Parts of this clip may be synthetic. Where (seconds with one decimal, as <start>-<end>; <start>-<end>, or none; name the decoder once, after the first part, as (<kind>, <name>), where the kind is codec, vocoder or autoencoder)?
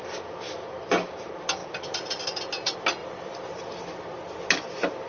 1.6-2.2 (vocoder, BigVGAN v2); 3.0-4.3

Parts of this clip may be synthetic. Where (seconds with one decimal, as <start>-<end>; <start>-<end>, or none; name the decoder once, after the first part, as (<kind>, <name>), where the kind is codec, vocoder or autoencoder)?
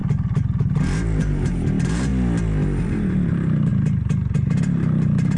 1.2-2.1 (vocoder, BigVGAN v2); 2.8-3.7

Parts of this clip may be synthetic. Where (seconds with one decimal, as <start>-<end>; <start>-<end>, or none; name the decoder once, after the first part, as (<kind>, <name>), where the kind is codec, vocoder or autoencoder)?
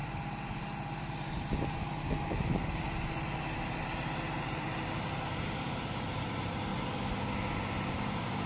4.4-6.7 (vocoder, BigVGAN v2); 7.9-8.5